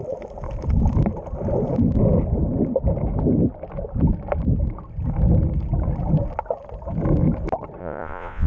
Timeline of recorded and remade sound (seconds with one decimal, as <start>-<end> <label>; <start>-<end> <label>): 0.0-7.8 recorded; 7.8-8.5 remade